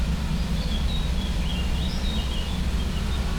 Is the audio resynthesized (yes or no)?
no